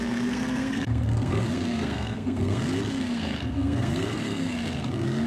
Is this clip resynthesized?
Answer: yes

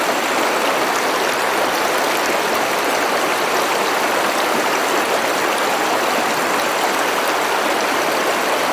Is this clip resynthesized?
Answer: no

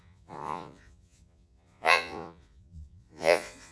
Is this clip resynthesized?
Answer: yes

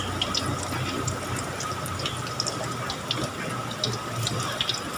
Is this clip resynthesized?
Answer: no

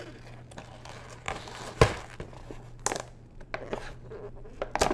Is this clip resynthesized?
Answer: no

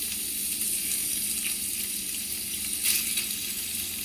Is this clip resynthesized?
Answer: no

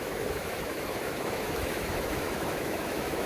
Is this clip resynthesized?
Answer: yes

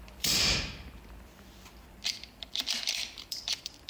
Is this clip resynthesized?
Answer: yes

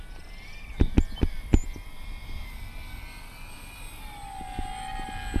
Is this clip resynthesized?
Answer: no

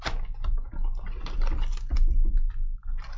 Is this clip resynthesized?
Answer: no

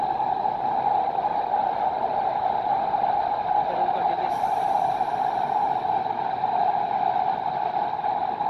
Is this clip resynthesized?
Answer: no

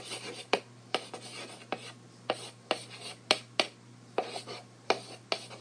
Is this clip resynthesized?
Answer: no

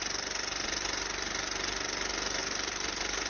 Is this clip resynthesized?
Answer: no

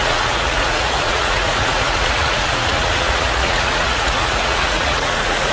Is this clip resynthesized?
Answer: yes